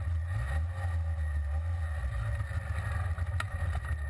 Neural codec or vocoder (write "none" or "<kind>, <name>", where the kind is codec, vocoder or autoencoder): none